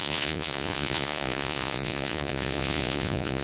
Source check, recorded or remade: remade